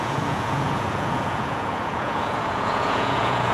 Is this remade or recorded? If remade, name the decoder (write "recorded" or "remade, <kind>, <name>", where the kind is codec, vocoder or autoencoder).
remade, vocoder, Vocos